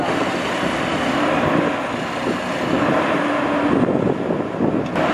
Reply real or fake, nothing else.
real